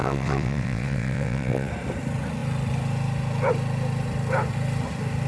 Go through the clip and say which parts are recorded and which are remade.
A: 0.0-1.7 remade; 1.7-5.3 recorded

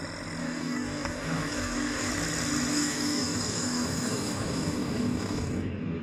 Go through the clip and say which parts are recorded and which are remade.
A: 0.0-0.4 recorded; 0.4-2.1 remade; 2.1-2.7 recorded; 2.7-6.0 remade

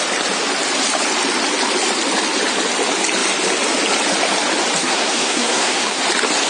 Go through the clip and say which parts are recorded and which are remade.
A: 0.0-4.8 recorded; 4.8-6.0 remade; 6.0-6.5 recorded

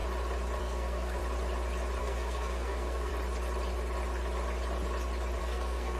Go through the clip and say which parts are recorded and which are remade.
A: 0.0-0.6 recorded; 0.6-1.2 remade; 1.2-2.0 recorded; 2.0-3.1 remade; 3.1-5.4 recorded; 5.4-6.0 remade